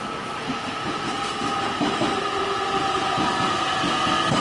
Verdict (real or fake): real